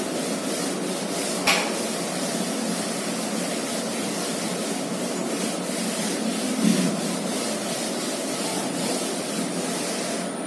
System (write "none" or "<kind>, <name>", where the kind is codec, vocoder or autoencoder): none